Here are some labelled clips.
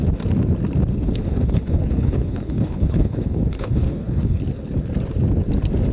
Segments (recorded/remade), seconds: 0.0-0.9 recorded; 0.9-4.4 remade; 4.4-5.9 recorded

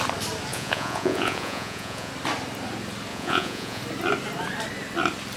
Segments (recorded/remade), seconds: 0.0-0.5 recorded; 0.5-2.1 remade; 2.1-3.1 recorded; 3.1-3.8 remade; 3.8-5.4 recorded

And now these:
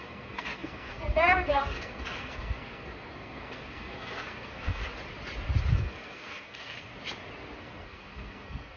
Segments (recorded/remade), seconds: 0.0-4.8 remade; 4.8-5.7 recorded; 5.7-6.9 remade; 6.9-7.6 recorded; 7.6-8.8 remade